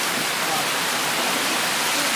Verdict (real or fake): fake